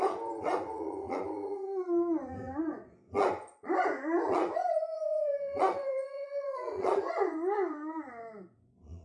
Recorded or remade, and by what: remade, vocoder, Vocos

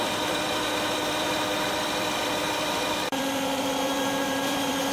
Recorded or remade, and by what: remade, vocoder, BigVGAN v2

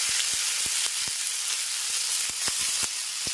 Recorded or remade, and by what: recorded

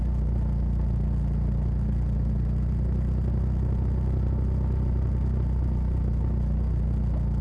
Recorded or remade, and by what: recorded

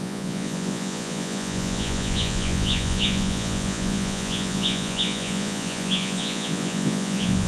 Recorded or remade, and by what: remade, vocoder, Vocos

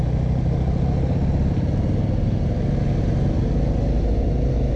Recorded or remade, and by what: recorded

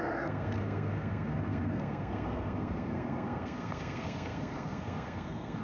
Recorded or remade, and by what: remade, codec, SNAC